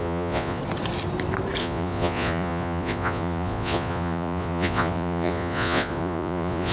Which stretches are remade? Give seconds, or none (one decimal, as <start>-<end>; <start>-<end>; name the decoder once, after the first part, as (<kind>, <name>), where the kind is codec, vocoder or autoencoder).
0.0-0.6 (vocoder, Vocos); 1.6-6.7